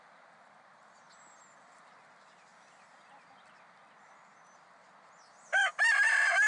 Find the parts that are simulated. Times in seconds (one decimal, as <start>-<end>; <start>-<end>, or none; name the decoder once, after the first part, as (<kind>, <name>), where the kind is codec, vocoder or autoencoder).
none